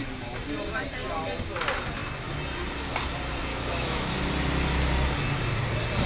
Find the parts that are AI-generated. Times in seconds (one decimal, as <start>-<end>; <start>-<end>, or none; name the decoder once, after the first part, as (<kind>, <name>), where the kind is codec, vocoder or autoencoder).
3.5-4.3 (autoencoder, DAC-VAE)